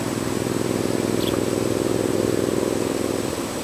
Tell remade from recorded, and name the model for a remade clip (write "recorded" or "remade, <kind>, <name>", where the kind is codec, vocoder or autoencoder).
recorded